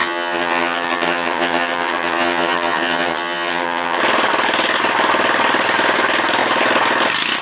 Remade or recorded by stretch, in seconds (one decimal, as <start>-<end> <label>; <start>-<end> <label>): 0.0-4.0 remade; 4.0-7.4 recorded